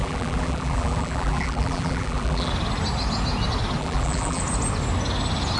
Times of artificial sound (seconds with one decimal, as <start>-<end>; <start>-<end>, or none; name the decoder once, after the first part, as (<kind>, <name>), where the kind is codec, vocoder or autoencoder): 0.0-2.5 (vocoder, BigVGAN v2); 3.8-4.4